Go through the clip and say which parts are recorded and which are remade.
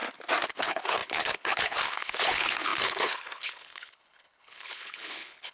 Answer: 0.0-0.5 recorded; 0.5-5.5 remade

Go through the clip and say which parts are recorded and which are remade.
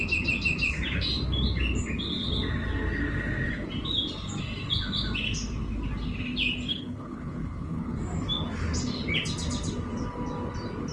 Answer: 0.0-6.7 recorded; 6.7-8.0 remade; 8.0-10.9 recorded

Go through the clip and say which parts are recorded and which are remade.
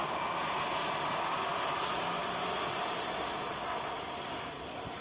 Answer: 0.0-5.0 recorded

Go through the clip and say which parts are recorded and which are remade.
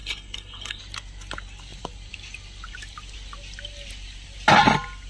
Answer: 0.0-0.8 remade; 0.8-5.1 recorded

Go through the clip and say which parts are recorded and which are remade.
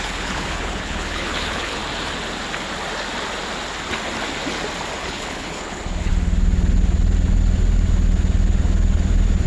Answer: 0.0-1.8 remade; 1.8-5.0 recorded; 5.0-6.1 remade; 6.1-9.5 recorded